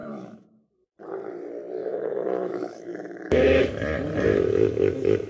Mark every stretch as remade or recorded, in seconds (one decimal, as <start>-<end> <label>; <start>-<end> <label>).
0.0-0.7 remade; 0.7-1.8 recorded; 1.8-3.7 remade; 3.7-4.3 recorded; 4.3-5.3 remade